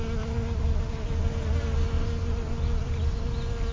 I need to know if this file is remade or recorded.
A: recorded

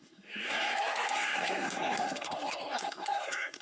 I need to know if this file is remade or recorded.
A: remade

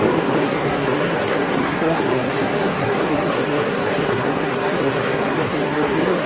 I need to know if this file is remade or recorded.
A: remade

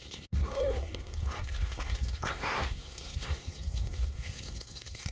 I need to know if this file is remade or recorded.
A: remade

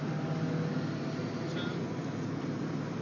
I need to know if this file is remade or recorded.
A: recorded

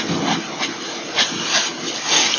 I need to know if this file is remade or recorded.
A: recorded